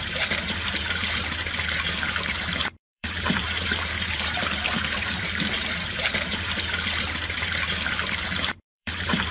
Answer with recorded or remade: remade